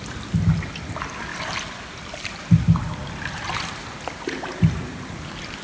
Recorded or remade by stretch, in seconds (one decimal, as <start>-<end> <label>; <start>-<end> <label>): 0.0-5.6 recorded